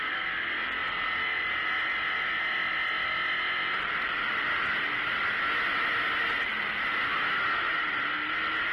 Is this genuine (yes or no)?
yes